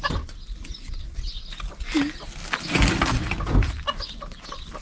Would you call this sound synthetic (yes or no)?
no